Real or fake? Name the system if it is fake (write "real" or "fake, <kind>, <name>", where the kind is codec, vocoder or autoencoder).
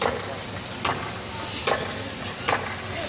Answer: real